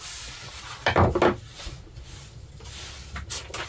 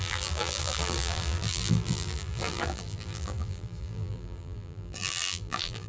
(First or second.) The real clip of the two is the first